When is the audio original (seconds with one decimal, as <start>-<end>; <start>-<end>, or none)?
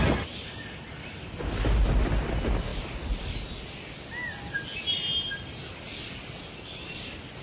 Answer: 0.0-7.4